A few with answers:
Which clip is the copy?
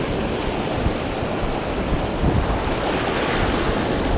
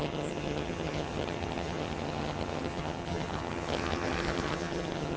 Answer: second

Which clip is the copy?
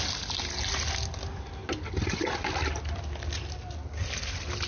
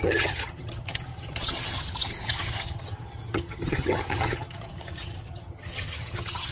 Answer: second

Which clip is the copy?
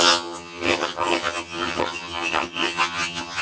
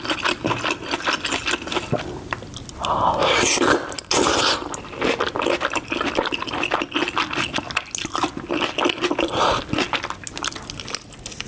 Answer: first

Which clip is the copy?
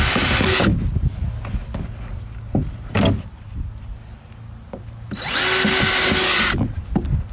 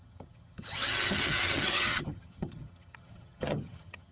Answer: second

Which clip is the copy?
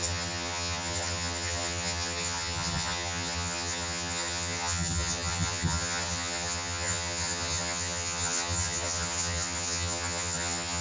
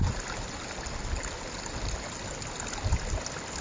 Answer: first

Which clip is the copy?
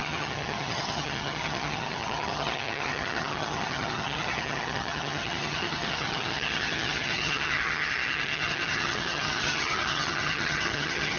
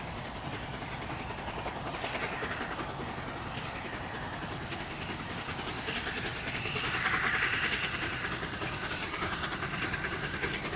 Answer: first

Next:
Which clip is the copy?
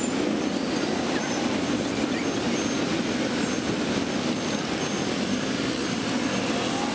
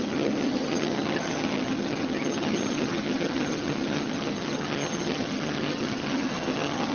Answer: second